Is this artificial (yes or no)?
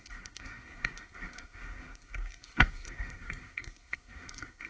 yes